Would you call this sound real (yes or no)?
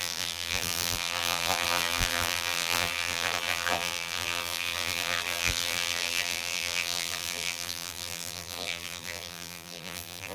no